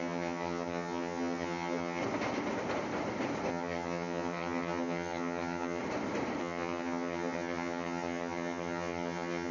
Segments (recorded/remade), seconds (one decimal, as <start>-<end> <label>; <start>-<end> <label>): 0.0-2.0 remade; 2.0-3.5 recorded; 3.5-5.8 remade; 5.8-6.4 recorded; 6.4-9.5 remade